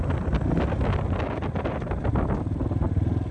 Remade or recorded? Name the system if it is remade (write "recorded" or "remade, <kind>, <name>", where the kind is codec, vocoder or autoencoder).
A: recorded